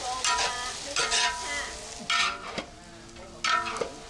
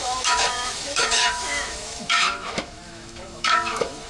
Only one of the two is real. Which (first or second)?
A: first